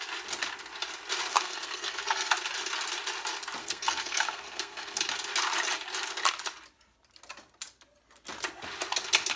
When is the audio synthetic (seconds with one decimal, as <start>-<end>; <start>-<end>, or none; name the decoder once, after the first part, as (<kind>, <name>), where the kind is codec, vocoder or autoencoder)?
1.3-2.3 (codec, SNAC); 3.6-5.0